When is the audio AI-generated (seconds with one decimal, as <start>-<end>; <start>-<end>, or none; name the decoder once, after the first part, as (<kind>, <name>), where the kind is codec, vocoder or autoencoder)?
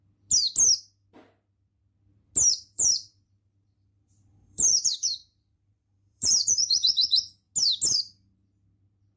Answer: 2.5-7.3 (vocoder, BigVGAN v2)